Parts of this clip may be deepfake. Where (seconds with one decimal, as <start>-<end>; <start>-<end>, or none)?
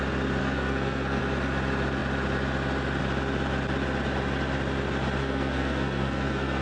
0.4-1.2; 5.2-6.6